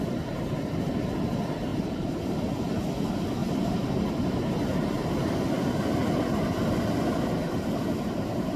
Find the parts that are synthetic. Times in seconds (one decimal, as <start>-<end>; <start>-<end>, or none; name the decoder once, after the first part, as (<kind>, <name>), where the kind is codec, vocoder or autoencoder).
1.7-2.8 (vocoder, BigVGAN v2); 3.4-5.3